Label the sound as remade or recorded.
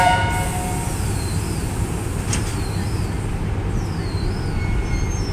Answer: recorded